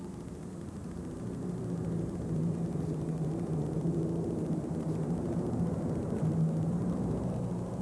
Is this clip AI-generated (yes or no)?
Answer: yes